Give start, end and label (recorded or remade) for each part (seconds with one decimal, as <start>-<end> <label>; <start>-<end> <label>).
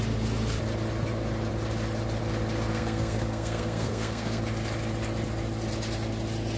0.0-2.7 recorded; 2.7-4.4 remade; 4.4-6.6 recorded